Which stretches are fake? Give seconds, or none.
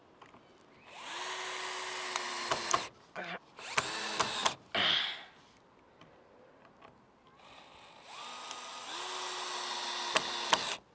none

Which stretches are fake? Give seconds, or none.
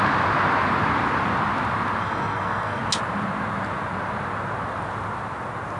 2.0-2.8 (codec, SNAC)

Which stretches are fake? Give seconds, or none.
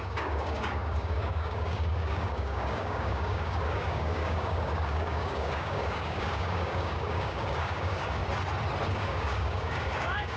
0.0-8.2 (codec, DAC); 8.9-10.4